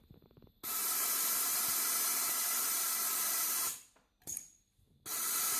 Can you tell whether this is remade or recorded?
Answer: recorded